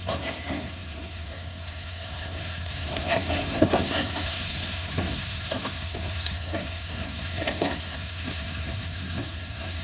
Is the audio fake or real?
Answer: fake